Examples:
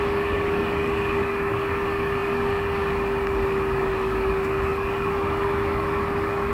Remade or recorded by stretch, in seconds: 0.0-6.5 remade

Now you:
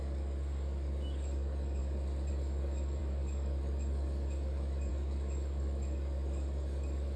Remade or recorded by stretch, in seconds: 0.0-1.8 remade; 1.8-2.3 recorded; 2.3-7.2 remade